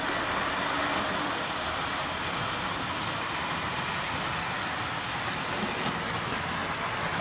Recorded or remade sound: recorded